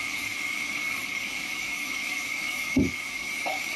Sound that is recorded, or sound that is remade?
remade